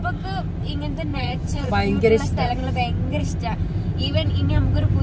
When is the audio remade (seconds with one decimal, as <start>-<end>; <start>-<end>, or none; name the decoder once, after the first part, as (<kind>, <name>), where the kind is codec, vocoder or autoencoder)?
1.1-1.7 (vocoder, Vocos)